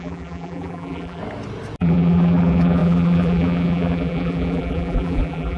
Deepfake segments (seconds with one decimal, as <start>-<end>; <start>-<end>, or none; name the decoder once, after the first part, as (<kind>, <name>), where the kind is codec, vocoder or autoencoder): 0.0-1.2 (vocoder, BigVGAN v2); 1.8-5.6